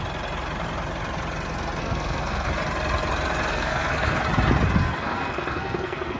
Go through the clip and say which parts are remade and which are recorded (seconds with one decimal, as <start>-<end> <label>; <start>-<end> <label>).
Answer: 0.0-1.8 recorded; 1.8-2.5 remade; 2.5-3.5 recorded; 3.5-4.2 remade; 4.2-4.8 recorded; 4.8-6.2 remade